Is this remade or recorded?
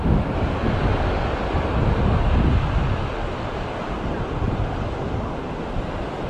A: recorded